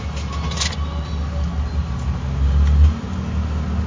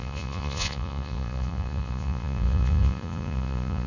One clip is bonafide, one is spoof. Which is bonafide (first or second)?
first